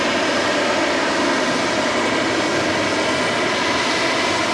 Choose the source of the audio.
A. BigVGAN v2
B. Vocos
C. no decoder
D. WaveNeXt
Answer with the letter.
C